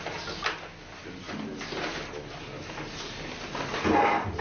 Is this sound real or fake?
real